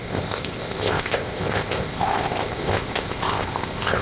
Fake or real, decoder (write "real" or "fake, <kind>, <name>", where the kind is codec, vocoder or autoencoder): fake, codec, ZipCodec